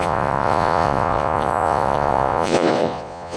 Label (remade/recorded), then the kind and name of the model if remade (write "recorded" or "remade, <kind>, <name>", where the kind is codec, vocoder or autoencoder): remade, vocoder, Vocos